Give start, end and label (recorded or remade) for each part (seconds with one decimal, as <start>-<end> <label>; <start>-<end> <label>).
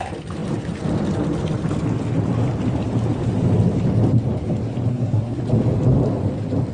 0.0-4.9 recorded; 4.9-5.4 remade; 5.4-6.7 recorded